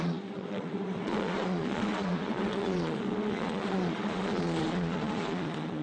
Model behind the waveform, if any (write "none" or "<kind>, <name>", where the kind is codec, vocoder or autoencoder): vocoder, Vocos